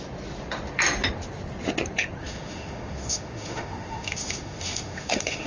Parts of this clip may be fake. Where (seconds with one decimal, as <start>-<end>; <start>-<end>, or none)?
2.2-5.5